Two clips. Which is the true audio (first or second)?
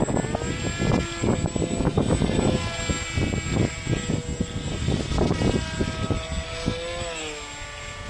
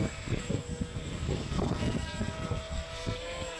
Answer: first